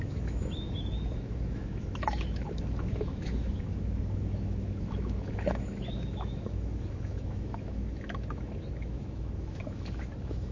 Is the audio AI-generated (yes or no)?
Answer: yes